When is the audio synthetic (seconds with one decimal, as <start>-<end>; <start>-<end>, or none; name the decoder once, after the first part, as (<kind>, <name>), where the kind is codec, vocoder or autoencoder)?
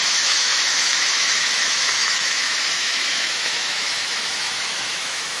0.0-5.4 (autoencoder, DAC-VAE)